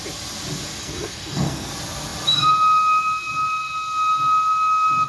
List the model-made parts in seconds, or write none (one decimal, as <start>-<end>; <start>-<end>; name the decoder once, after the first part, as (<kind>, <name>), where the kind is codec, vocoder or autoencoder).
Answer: 0.8-1.7 (codec, SNAC)